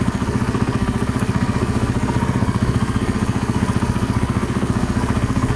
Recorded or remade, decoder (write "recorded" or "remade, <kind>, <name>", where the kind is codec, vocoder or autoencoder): remade, codec, SNAC